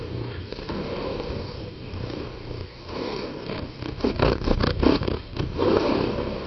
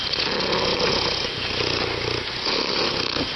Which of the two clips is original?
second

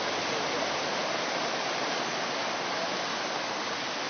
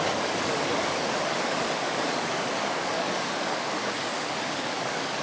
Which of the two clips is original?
first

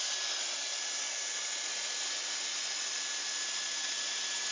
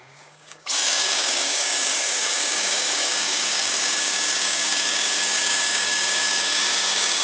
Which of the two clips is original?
first